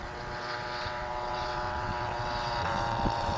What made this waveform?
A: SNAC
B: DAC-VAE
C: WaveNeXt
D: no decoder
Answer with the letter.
C